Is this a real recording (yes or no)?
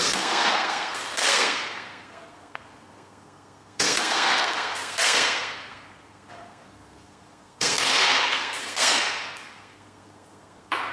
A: no